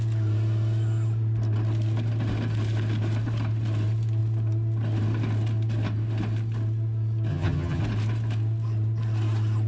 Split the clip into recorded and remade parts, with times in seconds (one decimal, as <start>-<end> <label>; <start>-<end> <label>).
0.0-7.3 recorded; 7.3-7.8 remade; 7.8-9.7 recorded

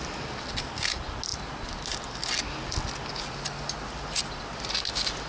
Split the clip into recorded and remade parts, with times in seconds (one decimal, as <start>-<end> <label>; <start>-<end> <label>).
0.0-5.3 recorded